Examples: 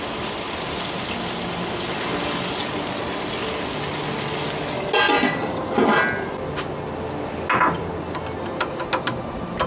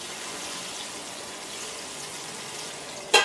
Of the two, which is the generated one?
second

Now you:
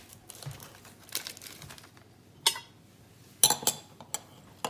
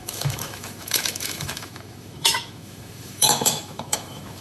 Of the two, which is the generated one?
second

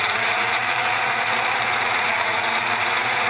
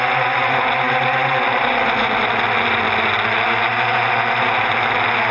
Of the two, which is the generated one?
first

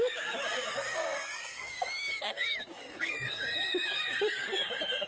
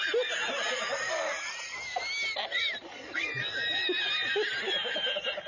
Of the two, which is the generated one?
first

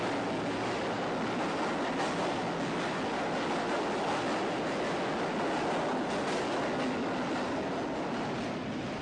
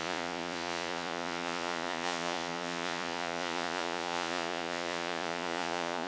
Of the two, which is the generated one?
second